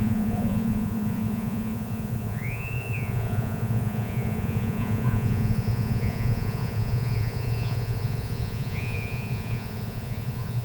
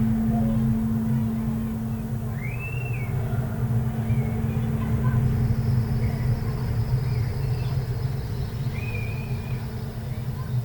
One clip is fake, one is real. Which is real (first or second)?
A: second